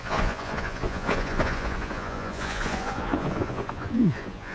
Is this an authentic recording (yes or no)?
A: no